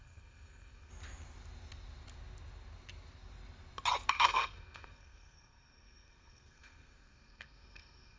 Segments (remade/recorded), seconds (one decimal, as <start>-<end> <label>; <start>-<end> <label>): 0.0-0.9 remade; 0.9-4.1 recorded; 4.1-8.2 remade